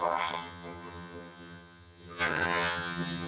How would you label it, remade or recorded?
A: remade